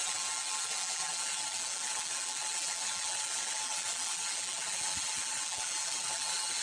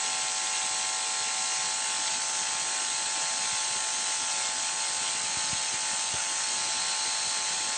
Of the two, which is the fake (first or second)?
first